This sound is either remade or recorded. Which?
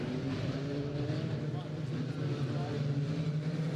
recorded